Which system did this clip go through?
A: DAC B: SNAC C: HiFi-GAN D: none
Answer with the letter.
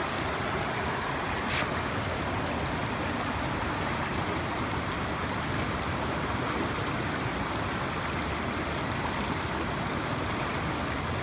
D